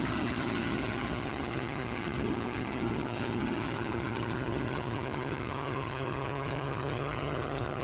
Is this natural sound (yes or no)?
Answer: no